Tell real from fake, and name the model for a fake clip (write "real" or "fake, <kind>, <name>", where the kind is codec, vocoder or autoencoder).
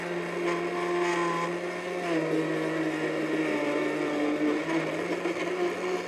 real